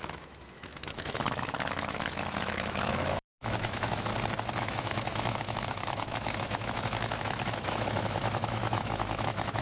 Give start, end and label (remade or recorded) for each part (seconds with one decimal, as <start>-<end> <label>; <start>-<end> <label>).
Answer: 0.0-4.1 remade; 4.1-4.6 recorded; 4.6-9.6 remade